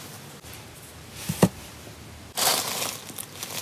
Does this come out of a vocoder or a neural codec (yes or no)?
no